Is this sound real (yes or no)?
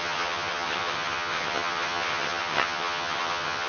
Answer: no